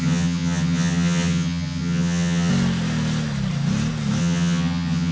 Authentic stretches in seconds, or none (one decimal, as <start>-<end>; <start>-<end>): 2.5-4.2